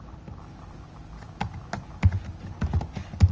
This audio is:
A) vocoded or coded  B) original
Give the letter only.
B